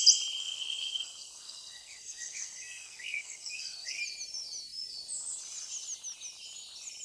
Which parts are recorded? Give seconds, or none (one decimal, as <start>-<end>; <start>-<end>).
0.0-0.4; 4.0-7.0